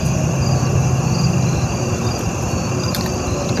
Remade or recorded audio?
recorded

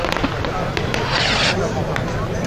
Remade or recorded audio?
recorded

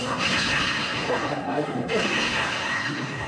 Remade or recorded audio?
remade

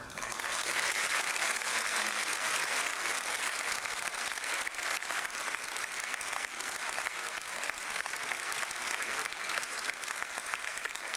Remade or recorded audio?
remade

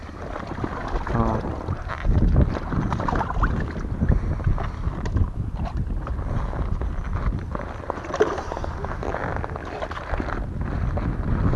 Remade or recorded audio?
recorded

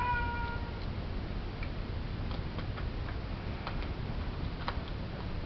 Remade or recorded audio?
recorded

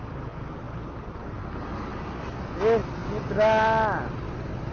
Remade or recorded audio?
recorded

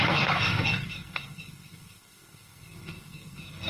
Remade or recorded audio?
remade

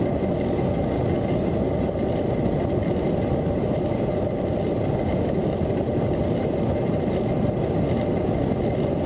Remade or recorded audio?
recorded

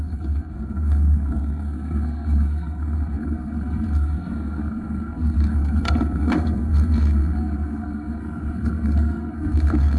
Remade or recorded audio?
remade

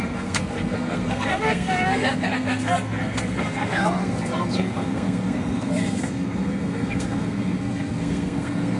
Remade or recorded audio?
remade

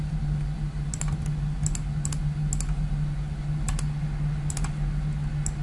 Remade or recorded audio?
recorded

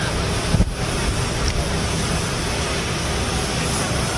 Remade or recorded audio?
recorded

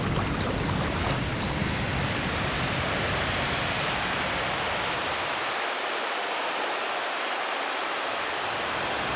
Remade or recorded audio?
recorded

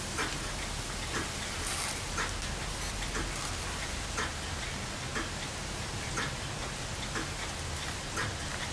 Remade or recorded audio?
recorded